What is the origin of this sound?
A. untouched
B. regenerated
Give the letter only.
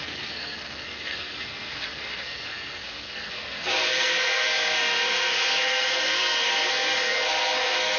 B